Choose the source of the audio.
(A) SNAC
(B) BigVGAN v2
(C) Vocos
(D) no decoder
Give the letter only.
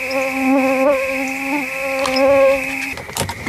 D